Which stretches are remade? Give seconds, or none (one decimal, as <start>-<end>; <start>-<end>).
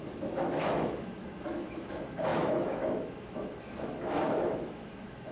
0.0-5.3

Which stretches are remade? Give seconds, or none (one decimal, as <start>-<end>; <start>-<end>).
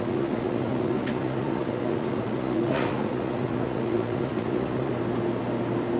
0.0-4.9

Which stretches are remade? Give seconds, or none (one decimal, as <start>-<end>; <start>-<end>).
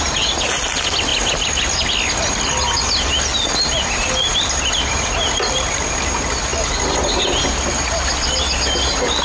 none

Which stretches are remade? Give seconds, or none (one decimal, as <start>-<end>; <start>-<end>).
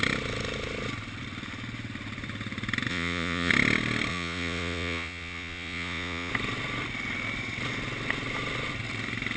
2.9-3.5; 4.1-6.3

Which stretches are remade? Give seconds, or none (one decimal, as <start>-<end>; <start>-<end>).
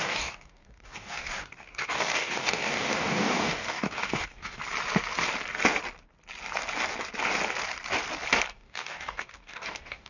0.0-4.6; 8.5-10.1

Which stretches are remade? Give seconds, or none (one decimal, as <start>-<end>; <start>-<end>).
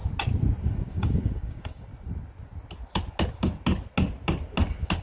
0.6-1.9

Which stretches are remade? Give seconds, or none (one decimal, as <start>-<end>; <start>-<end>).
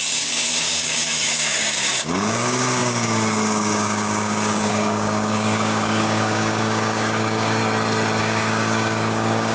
0.0-7.6; 8.2-9.5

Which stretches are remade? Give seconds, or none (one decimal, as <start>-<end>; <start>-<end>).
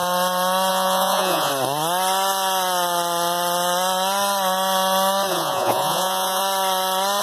0.7-1.5; 5.3-6.4